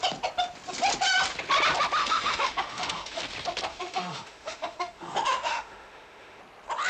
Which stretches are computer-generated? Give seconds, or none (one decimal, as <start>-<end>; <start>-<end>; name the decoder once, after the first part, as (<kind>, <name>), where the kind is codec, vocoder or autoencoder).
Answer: 2.0-3.2 (autoencoder, DAC-VAE); 3.7-6.4

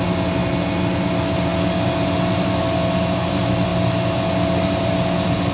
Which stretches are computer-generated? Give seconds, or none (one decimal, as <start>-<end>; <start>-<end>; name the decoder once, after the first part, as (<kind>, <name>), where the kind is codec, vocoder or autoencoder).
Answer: none

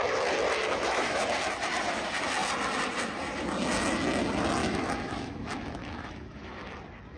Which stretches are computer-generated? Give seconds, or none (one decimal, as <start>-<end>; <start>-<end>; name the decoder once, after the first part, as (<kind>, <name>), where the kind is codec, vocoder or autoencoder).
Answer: 0.6-1.2 (autoencoder, DAC-VAE); 4.6-6.6

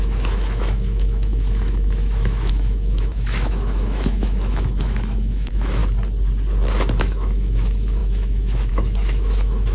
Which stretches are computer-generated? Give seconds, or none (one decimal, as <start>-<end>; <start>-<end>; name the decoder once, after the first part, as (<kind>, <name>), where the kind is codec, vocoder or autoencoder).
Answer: 0.0-5.8 (autoencoder, DAC-VAE); 7.0-9.7

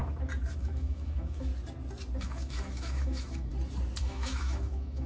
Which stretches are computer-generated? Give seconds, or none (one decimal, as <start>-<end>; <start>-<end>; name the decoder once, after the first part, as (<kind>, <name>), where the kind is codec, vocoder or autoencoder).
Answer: 0.6-1.5 (autoencoder, DAC-VAE); 2.2-3.5; 4.0-5.1

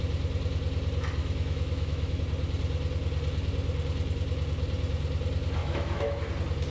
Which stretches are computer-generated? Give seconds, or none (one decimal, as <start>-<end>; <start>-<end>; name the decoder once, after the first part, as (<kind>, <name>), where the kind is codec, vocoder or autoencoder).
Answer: 1.2-2.2 (autoencoder, DAC-VAE); 5.6-6.3

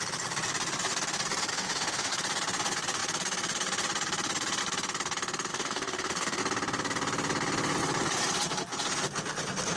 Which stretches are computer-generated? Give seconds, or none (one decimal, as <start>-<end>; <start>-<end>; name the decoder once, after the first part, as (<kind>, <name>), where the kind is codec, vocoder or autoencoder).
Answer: 1.5-2.1 (autoencoder, DAC-VAE); 5.5-6.4